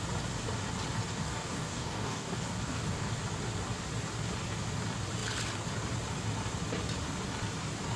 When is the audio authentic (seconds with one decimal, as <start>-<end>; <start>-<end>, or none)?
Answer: 0.0-1.1; 3.1-8.0